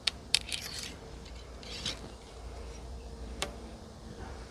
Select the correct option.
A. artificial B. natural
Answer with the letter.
A